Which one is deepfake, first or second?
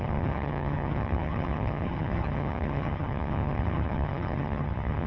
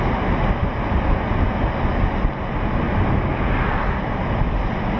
first